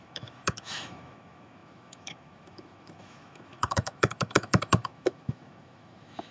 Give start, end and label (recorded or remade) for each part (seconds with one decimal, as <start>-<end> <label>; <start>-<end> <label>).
0.0-6.3 remade